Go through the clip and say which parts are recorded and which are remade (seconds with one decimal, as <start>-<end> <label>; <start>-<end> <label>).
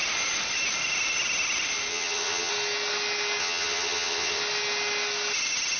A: 0.0-1.9 recorded; 1.9-2.5 remade; 2.5-3.4 recorded; 3.4-4.4 remade; 4.4-5.8 recorded